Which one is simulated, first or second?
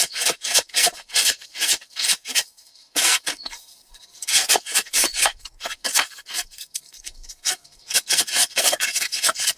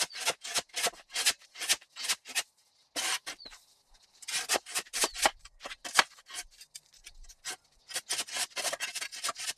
first